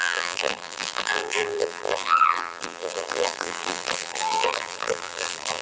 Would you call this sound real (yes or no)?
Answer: no